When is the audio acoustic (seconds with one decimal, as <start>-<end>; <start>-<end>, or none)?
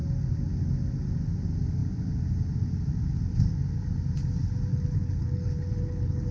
0.0-4.7